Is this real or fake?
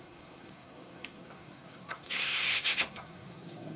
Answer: fake